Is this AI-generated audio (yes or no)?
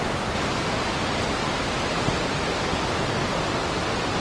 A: no